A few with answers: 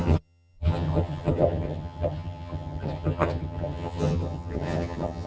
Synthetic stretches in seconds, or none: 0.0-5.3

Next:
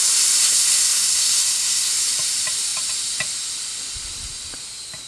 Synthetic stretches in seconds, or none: 0.4-1.9

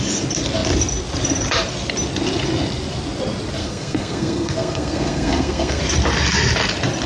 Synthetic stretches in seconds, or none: 3.6-5.8

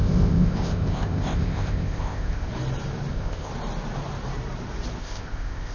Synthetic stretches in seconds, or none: 0.0-2.5; 3.1-3.5; 5.0-5.7

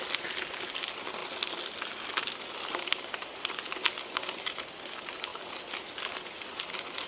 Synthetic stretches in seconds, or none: none

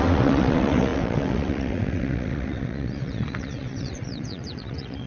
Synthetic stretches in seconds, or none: 0.0-5.1